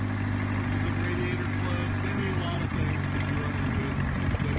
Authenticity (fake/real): real